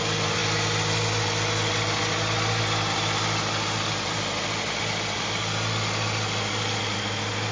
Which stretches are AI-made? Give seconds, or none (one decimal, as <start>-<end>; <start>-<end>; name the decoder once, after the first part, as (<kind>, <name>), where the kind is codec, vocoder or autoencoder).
none